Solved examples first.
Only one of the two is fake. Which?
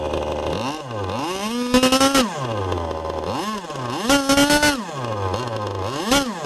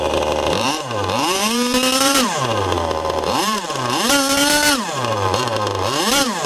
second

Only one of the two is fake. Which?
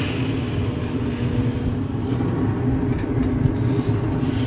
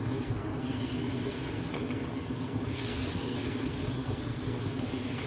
second